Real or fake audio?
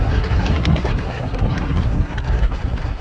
fake